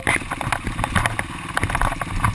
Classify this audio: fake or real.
real